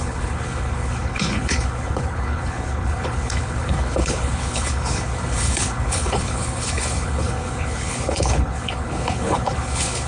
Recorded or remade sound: remade